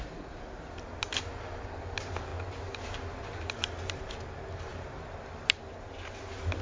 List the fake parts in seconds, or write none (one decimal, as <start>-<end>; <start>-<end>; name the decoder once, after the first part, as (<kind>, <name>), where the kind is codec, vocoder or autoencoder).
none